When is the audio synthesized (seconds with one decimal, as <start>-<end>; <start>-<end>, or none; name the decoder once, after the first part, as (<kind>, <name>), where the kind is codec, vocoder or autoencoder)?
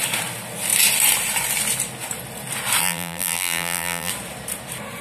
2.8-4.1 (vocoder, BigVGAN v2)